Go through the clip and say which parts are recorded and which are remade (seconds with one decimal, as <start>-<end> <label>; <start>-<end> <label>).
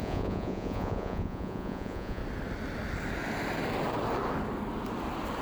0.0-2.2 remade; 2.2-5.4 recorded